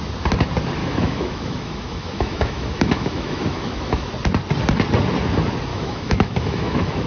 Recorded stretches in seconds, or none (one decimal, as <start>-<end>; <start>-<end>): 0.0-0.8; 4.1-5.7